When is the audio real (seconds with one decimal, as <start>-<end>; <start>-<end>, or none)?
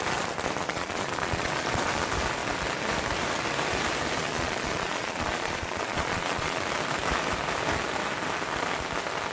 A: 0.0-0.6; 2.0-4.2; 6.6-9.3